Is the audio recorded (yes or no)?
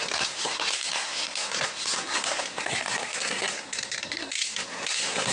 no